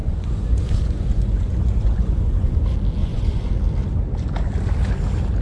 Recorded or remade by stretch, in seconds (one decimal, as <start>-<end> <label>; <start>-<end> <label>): 0.0-2.6 remade; 2.6-3.0 recorded; 3.0-3.5 remade; 3.5-5.4 recorded